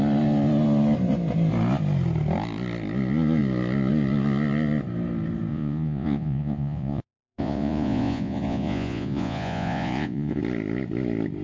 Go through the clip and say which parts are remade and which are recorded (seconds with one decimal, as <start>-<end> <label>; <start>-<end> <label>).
0.0-5.5 recorded; 5.5-10.4 remade; 10.4-11.4 recorded